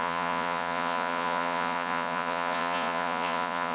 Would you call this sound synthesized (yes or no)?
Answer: yes